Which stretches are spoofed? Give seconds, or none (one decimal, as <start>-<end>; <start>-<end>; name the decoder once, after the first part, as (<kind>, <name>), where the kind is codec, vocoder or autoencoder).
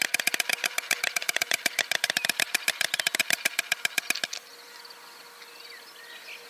0.5-1.6 (vocoder, BigVGAN v2)